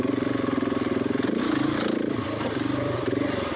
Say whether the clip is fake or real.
fake